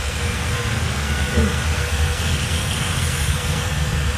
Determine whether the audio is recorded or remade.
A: remade